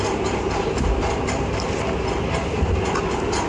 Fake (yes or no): no